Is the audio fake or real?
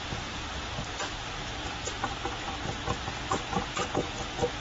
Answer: real